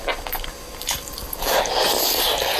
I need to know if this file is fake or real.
real